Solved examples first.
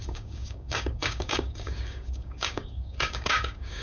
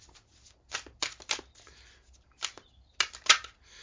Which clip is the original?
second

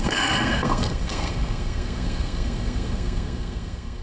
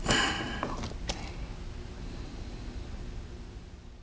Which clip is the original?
second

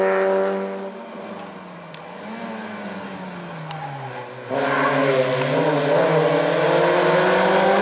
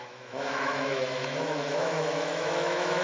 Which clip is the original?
first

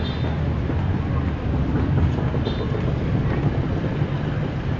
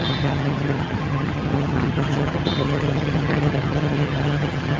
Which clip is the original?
first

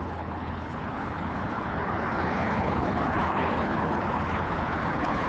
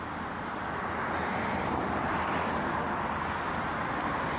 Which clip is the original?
second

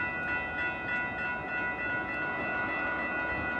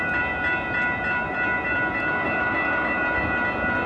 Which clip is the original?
first